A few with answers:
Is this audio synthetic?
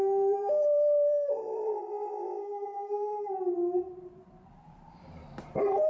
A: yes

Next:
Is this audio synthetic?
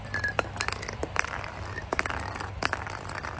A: no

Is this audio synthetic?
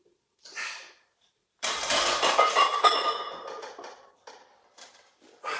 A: yes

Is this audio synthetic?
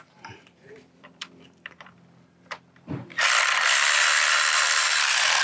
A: yes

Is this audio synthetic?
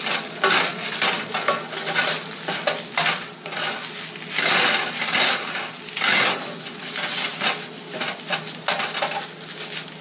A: no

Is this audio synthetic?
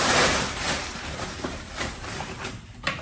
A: yes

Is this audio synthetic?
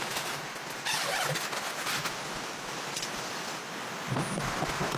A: no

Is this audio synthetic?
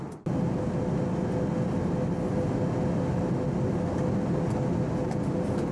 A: no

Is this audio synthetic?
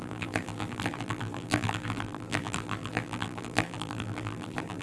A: yes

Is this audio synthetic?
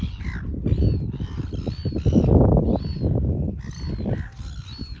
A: no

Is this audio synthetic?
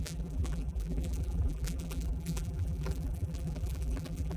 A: yes